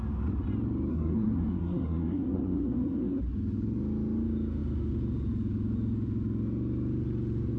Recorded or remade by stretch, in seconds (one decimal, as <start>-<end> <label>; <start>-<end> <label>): 0.0-0.9 recorded; 0.9-3.2 remade; 3.2-7.6 recorded